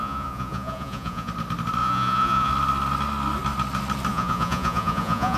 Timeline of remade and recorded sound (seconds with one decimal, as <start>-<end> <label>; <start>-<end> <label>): 0.0-1.3 remade; 1.3-1.8 recorded; 1.8-2.5 remade; 2.5-4.1 recorded; 4.1-5.4 remade